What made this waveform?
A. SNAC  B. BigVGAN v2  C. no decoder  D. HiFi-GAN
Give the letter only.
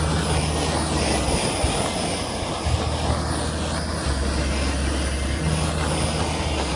C